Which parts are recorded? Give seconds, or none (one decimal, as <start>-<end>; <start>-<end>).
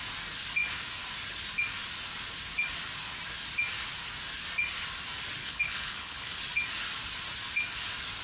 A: 0.0-5.4; 6.4-8.2